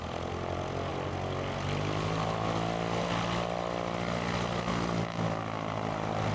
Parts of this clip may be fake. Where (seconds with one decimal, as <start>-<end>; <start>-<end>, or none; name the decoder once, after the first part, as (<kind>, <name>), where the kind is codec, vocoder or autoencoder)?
none